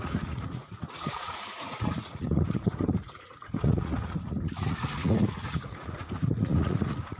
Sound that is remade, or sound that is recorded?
remade